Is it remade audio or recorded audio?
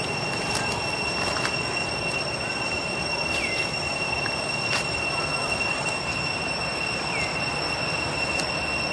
recorded